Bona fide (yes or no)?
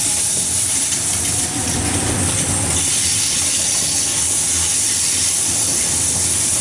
yes